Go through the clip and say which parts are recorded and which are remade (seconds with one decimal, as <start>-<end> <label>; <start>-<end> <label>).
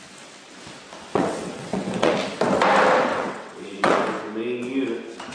0.0-1.1 recorded; 1.1-2.1 remade; 2.1-3.1 recorded; 3.1-4.0 remade; 4.0-5.3 recorded